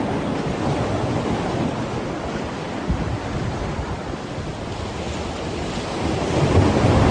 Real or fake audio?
real